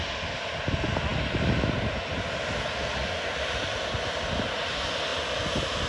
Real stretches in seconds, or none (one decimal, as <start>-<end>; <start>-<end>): 0.0-5.9